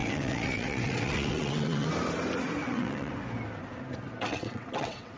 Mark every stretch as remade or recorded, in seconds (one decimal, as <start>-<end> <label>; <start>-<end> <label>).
0.0-1.9 remade; 1.9-2.6 recorded; 2.6-3.1 remade; 3.1-4.2 recorded; 4.2-5.2 remade